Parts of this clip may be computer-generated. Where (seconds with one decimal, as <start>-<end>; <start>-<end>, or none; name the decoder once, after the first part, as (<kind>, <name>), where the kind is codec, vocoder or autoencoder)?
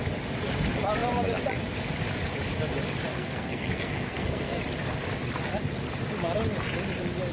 3.1-4.6 (codec, SNAC)